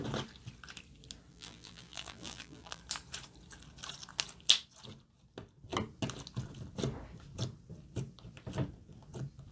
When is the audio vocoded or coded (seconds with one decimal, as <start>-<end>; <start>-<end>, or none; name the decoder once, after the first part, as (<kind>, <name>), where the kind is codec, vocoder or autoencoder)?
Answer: 1.3-2.8 (vocoder, BigVGAN v2)